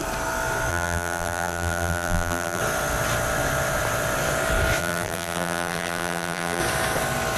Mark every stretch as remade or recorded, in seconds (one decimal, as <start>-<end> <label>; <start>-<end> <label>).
0.0-0.7 recorded; 0.7-2.6 remade; 2.6-4.8 recorded; 4.8-6.6 remade; 6.6-7.4 recorded